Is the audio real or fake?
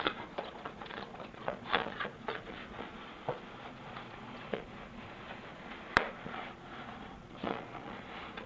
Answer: fake